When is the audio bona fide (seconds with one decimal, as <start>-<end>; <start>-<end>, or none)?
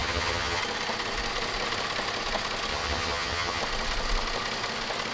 0.6-2.7; 3.6-5.1